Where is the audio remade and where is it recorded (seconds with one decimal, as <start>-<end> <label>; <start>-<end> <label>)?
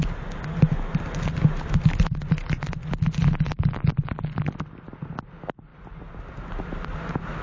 0.0-5.7 recorded; 5.7-6.5 remade; 6.5-7.4 recorded